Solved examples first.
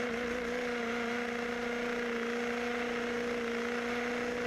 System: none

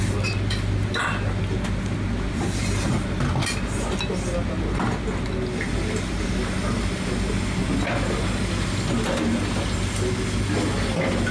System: none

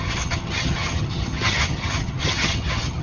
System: vocoder, HiFi-GAN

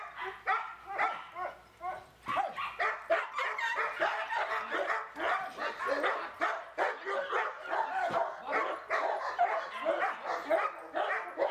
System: none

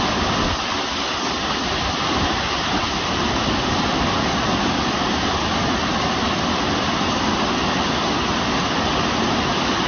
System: none